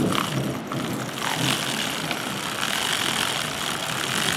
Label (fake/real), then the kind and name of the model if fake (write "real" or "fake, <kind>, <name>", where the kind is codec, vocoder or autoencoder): real